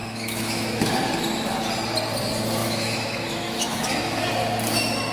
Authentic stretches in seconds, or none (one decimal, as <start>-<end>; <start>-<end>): 0.9-2.6; 4.2-5.1